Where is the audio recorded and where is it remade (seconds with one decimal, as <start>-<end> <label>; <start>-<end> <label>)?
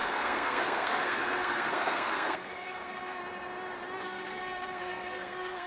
0.0-3.2 remade; 3.2-4.0 recorded; 4.0-5.7 remade